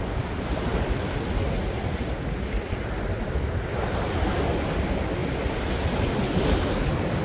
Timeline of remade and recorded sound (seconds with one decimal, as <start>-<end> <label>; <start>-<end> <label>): 0.0-0.7 recorded; 0.7-3.4 remade; 3.4-5.2 recorded; 5.2-6.1 remade; 6.1-7.2 recorded